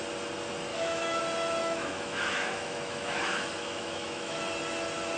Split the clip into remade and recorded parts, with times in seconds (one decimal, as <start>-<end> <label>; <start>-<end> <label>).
0.0-0.7 recorded; 0.7-1.2 remade; 1.2-1.6 recorded; 1.6-4.4 remade; 4.4-5.2 recorded